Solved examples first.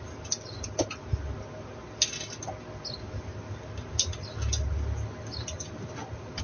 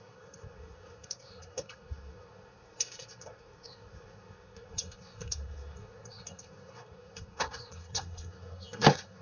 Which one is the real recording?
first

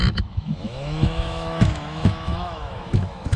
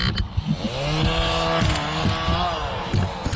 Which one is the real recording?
second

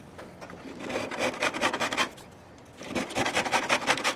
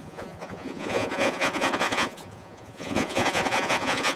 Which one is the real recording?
first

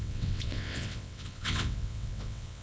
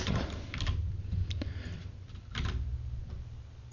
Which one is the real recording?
second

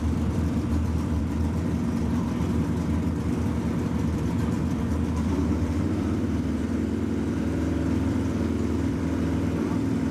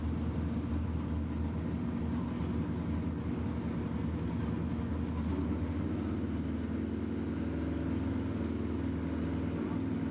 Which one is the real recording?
second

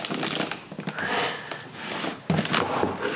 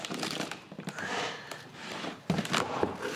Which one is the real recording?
first